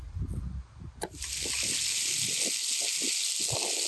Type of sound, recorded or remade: recorded